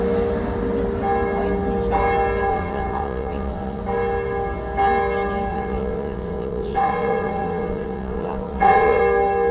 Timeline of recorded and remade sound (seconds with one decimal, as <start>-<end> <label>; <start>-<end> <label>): 0.0-2.5 recorded; 2.5-3.8 remade; 3.8-5.5 recorded; 5.5-9.0 remade; 9.0-9.5 recorded